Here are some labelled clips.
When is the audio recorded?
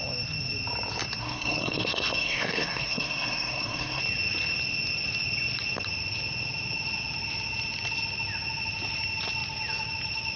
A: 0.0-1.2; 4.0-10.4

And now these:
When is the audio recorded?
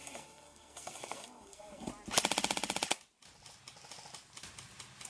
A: 1.9-5.1